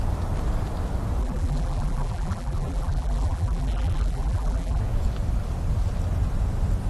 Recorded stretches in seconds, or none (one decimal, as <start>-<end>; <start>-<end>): 0.0-1.2; 4.8-6.9